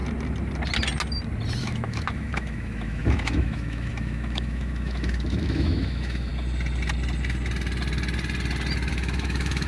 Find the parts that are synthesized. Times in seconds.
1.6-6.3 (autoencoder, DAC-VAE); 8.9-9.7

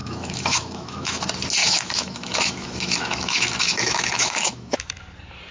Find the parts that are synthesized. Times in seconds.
0.0-1.2 (autoencoder, DAC-VAE); 1.6-4.9